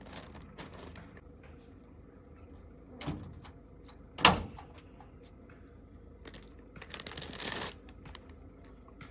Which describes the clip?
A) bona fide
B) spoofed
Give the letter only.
A